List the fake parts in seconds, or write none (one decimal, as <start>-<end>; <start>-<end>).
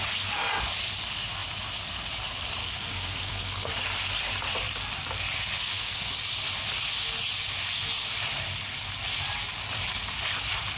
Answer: 2.6-3.7; 5.6-6.1